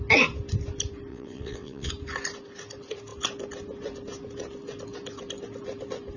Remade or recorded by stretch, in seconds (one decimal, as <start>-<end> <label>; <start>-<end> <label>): 0.0-1.1 recorded; 1.1-1.9 remade; 1.9-6.2 recorded